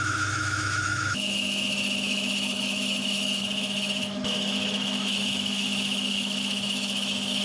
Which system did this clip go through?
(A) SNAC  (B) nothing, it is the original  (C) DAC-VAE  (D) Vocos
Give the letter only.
C